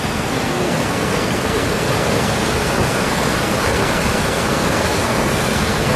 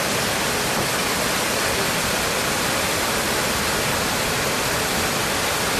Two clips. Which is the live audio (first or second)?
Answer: second